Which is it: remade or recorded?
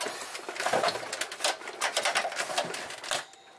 recorded